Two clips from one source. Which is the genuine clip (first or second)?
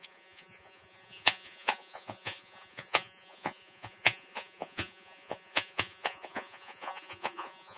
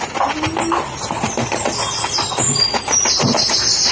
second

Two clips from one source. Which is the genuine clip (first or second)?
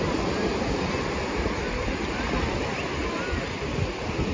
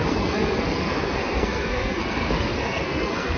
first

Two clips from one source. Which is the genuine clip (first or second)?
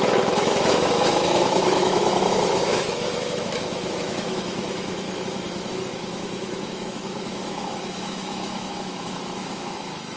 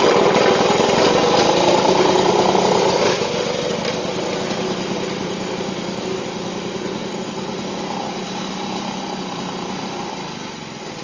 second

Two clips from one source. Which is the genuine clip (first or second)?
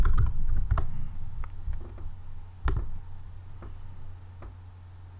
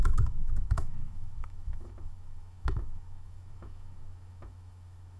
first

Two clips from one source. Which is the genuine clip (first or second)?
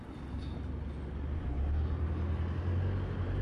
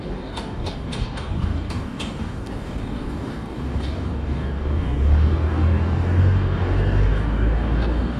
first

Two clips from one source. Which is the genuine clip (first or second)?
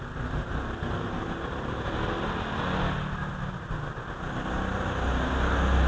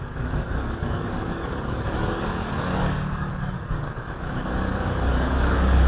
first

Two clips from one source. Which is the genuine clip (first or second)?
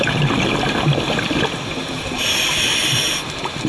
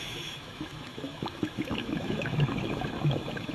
first